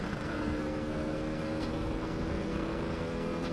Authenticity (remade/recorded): remade